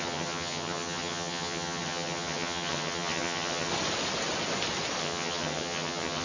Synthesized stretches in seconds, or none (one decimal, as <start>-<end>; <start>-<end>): 0.0-3.7; 5.0-6.2